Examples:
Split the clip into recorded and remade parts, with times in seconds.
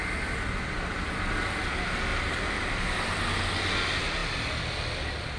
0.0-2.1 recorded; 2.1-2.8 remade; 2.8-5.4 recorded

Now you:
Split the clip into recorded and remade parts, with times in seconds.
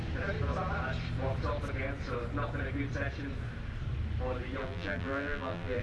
0.0-4.6 recorded; 4.6-5.8 remade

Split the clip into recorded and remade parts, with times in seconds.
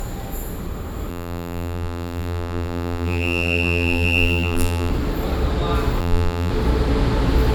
0.0-1.1 recorded; 1.1-4.9 remade; 4.9-6.0 recorded; 6.0-6.5 remade; 6.5-7.5 recorded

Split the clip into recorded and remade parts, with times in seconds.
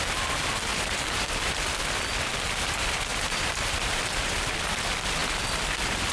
0.0-0.7 recorded; 0.7-1.3 remade; 1.3-3.1 recorded; 3.1-4.3 remade; 4.3-6.1 recorded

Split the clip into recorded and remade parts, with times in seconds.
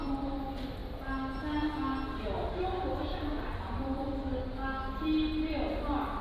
0.0-6.2 recorded